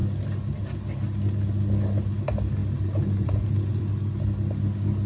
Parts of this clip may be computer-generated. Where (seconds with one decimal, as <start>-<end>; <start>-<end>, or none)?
2.6-3.8